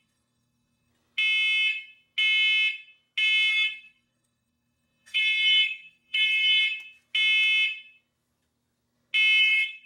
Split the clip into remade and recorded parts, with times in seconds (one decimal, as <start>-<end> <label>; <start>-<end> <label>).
0.0-0.9 remade; 0.9-3.5 recorded; 3.5-6.6 remade; 6.6-9.4 recorded; 9.4-9.9 remade